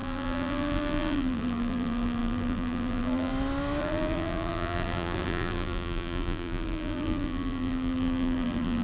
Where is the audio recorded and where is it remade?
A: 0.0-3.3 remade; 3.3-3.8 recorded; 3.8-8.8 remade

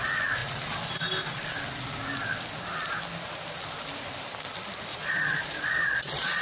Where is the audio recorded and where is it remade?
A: 0.0-4.9 recorded; 4.9-6.4 remade

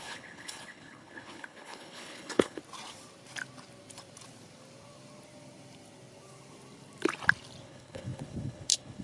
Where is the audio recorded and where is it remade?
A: 0.0-2.6 remade; 2.6-7.6 recorded; 7.6-9.0 remade

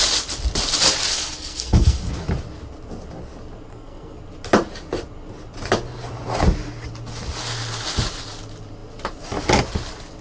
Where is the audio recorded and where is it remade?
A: 0.0-1.1 recorded; 1.1-2.0 remade; 2.0-3.7 recorded; 3.7-4.2 remade; 4.2-10.2 recorded